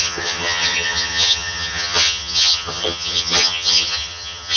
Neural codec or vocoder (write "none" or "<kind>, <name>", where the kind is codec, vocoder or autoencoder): vocoder, HiFi-GAN